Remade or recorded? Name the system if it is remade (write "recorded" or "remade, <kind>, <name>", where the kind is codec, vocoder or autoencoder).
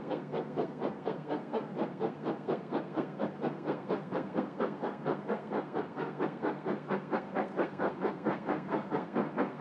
remade, codec, SNAC